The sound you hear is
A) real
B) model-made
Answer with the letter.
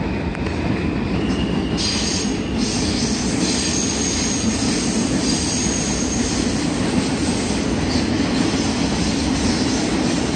A